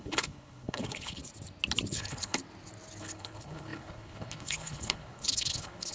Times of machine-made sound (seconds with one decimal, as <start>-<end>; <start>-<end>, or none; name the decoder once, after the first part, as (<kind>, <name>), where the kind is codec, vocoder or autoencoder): 0.0-1.2 (codec, HILCodec); 1.9-2.4; 3.0-5.9